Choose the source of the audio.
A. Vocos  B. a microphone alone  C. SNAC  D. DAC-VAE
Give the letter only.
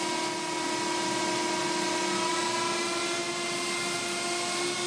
B